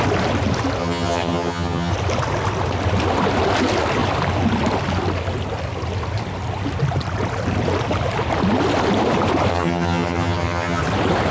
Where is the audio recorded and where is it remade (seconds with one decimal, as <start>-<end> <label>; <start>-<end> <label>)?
0.0-0.8 recorded; 0.8-1.9 remade; 1.9-9.5 recorded; 9.5-10.8 remade; 10.8-11.3 recorded